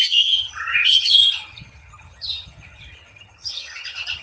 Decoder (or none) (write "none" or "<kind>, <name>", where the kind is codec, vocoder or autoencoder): vocoder, HiFi-GAN